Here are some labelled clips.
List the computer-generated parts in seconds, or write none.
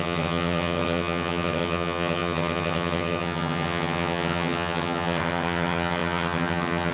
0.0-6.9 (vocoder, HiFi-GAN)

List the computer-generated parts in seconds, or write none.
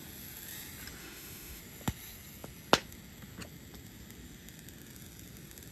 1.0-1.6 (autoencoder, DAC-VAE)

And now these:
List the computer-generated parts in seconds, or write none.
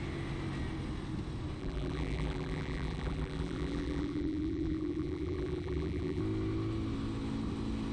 1.6-6.2 (vocoder, BigVGAN v2)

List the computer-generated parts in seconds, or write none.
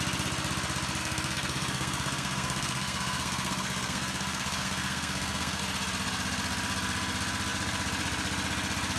1.0-5.6 (codec, SNAC)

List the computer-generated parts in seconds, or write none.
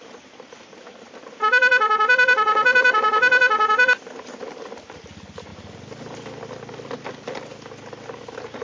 none